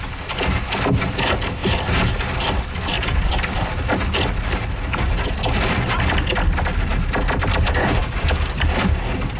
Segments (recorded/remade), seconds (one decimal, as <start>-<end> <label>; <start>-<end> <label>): 0.0-8.0 recorded; 8.0-8.6 remade; 8.6-9.4 recorded